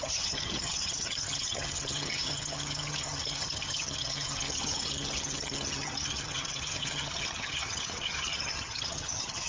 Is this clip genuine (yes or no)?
no